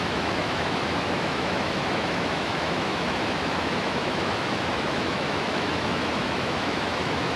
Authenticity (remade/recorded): remade